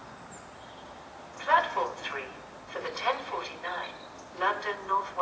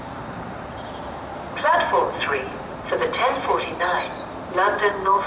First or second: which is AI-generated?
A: second